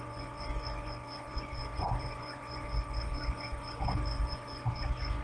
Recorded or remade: remade